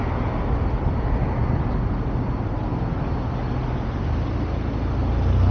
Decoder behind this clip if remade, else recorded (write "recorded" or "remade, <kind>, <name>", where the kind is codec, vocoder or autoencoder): recorded